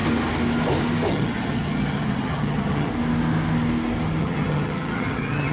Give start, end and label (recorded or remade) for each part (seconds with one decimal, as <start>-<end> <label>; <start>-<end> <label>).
0.0-1.1 recorded; 1.1-2.9 remade; 2.9-4.2 recorded; 4.2-5.5 remade